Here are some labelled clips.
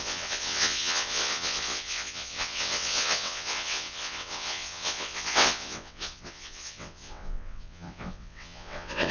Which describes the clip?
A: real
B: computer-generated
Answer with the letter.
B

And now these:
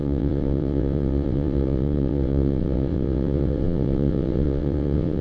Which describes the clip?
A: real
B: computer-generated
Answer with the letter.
B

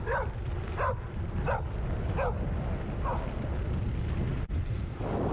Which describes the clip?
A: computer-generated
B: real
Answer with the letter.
B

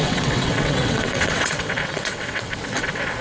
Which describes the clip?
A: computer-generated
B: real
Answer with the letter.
A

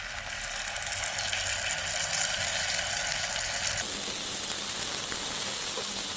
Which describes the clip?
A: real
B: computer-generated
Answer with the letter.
A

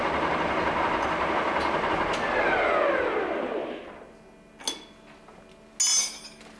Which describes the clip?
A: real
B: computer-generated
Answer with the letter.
A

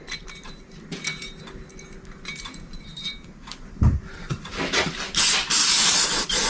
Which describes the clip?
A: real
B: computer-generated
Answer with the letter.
A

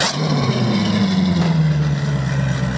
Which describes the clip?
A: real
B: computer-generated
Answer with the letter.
A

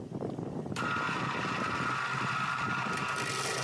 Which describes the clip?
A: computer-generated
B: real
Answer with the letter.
B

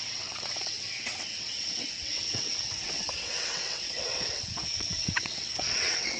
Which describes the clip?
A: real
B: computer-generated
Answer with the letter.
B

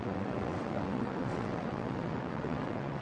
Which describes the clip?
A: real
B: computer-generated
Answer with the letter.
B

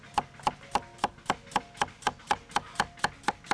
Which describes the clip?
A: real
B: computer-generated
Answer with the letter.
A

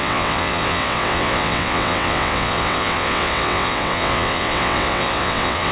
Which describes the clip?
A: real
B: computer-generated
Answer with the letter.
B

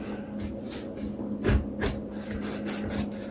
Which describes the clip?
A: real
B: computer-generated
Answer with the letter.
A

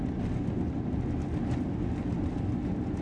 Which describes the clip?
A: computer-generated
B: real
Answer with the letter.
B